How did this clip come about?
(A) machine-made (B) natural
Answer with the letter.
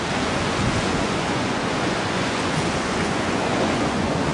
A